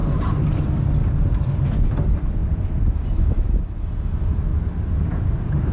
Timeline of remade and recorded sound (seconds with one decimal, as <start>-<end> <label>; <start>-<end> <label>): 0.0-0.6 remade; 0.6-1.0 recorded; 1.0-1.6 remade; 1.6-4.5 recorded; 4.5-5.7 remade